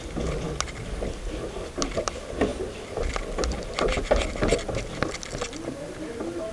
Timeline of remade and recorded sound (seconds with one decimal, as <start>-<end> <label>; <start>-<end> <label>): 0.0-6.5 recorded